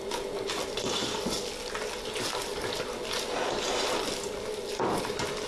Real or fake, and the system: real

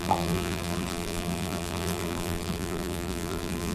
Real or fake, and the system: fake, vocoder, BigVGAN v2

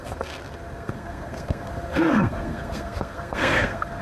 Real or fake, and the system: fake, codec, SNAC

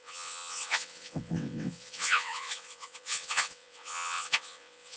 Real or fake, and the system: fake, vocoder, WaveNeXt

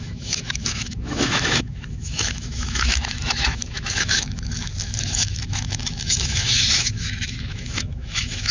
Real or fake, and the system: fake, autoencoder, DAC-VAE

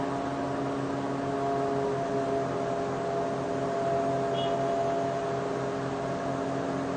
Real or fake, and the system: real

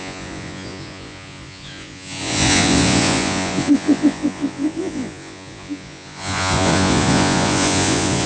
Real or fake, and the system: fake, vocoder, Vocos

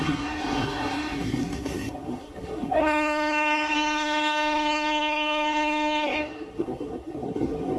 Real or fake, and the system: fake, codec, SNAC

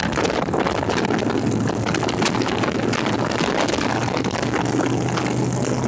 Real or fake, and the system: real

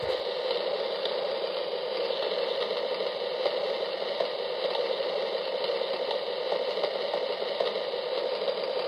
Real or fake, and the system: real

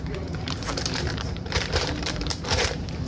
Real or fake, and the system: fake, vocoder, BigVGAN v2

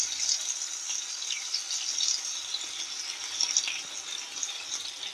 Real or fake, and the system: real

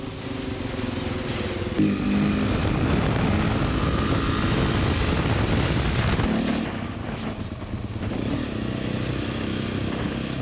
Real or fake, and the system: real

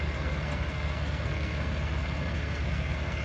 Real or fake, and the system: fake, codec, SNAC